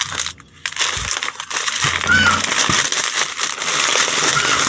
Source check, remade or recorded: recorded